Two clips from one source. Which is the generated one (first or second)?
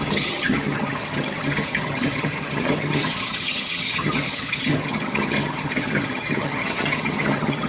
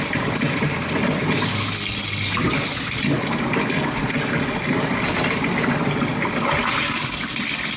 first